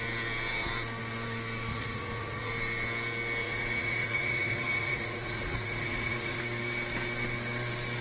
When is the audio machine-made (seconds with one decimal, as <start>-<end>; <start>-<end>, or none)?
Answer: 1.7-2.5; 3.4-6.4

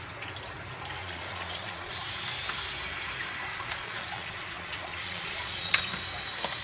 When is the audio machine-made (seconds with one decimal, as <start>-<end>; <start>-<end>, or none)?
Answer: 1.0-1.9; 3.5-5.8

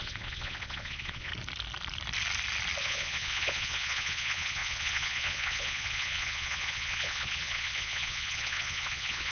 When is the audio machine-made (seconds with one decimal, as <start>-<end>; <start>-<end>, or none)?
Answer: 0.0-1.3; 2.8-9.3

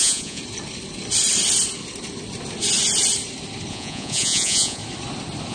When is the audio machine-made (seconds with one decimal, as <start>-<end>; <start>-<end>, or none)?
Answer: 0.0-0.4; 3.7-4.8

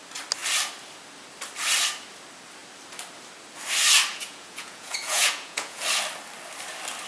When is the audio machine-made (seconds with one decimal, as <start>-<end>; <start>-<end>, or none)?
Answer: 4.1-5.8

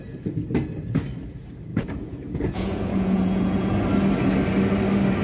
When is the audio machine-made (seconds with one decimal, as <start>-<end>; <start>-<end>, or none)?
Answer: 1.7-3.7